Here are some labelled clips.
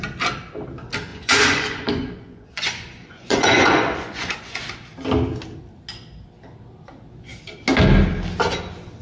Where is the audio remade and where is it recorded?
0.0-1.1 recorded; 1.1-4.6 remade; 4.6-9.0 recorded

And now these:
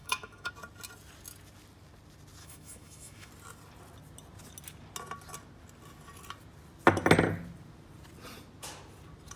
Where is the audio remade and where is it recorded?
0.0-0.5 remade; 0.5-2.4 recorded; 2.4-3.3 remade; 3.3-9.4 recorded

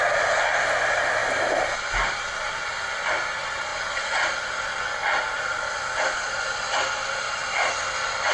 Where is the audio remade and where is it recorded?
0.0-8.3 recorded

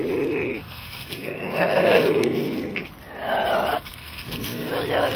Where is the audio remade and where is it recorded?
0.0-0.5 recorded; 0.5-2.9 remade; 2.9-3.7 recorded; 3.7-4.7 remade; 4.7-5.2 recorded